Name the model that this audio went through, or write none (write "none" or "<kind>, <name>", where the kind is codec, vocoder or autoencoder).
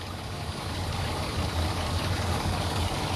codec, DAC